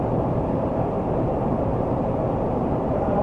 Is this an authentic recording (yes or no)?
no